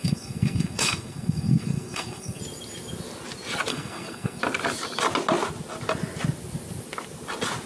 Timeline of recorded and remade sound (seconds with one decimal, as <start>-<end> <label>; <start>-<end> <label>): 0.0-2.4 remade; 2.4-3.7 recorded; 3.7-4.4 remade; 4.4-7.7 recorded

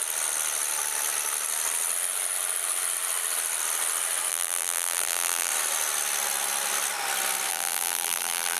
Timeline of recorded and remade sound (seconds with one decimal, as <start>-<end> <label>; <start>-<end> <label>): 0.0-4.3 recorded; 4.3-5.5 remade; 5.5-7.5 recorded; 7.5-8.6 remade

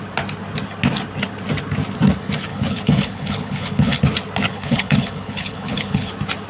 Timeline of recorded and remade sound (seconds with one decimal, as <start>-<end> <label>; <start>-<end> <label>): 0.0-2.5 recorded; 2.5-4.0 remade; 4.0-4.5 recorded; 4.5-6.1 remade; 6.1-6.5 recorded

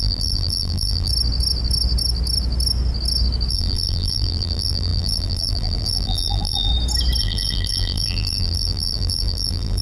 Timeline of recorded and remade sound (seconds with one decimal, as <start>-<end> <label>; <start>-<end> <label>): 0.0-1.1 remade; 1.1-3.5 recorded; 3.5-6.7 remade; 6.7-7.2 recorded; 7.2-9.8 remade

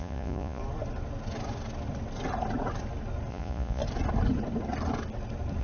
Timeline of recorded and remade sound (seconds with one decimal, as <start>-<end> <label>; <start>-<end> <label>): 0.0-0.6 remade; 0.6-3.3 recorded; 3.3-3.8 remade; 3.8-5.6 recorded

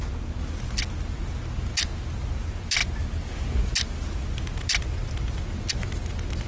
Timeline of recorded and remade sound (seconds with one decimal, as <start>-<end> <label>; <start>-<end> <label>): 0.0-6.5 recorded

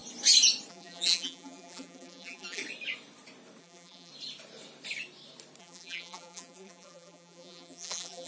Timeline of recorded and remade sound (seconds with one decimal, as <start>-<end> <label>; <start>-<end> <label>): 0.0-0.7 recorded; 0.7-2.6 remade; 2.6-3.6 recorded; 3.6-4.1 remade; 4.1-5.6 recorded; 5.6-8.3 remade